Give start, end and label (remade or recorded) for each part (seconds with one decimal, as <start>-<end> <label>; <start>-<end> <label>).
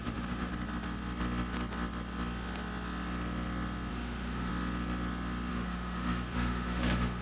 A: 0.0-0.5 remade; 0.5-3.9 recorded; 3.9-4.5 remade; 4.5-5.5 recorded; 5.5-7.2 remade